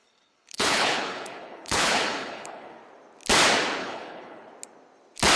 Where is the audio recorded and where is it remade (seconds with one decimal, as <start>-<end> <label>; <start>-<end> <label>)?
0.0-2.8 remade; 2.8-3.8 recorded; 3.8-4.5 remade; 4.5-5.4 recorded